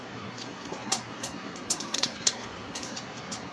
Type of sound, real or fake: fake